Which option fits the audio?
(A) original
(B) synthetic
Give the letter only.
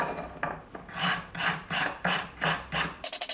A